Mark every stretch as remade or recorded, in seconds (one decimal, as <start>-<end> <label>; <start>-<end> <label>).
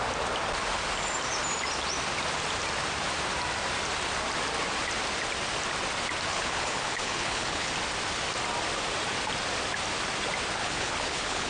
0.0-6.3 recorded; 6.3-7.7 remade; 7.7-10.6 recorded; 10.6-11.5 remade